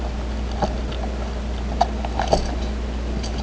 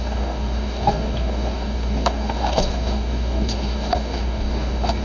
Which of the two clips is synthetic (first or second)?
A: second